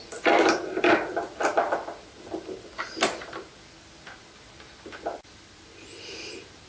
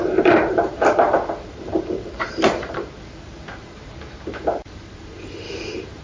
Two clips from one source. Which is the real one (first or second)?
first